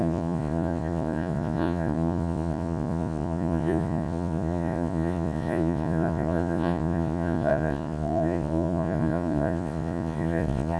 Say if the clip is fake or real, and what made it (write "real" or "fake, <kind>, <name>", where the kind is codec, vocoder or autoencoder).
fake, vocoder, Vocos